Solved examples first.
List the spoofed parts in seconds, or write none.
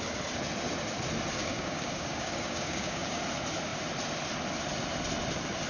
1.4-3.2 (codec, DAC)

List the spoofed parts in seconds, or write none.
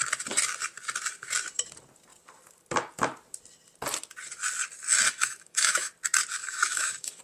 5.2-5.9 (autoencoder, DAC-VAE); 6.4-7.2